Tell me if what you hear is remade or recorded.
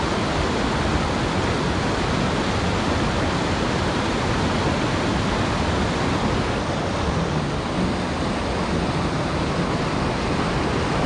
recorded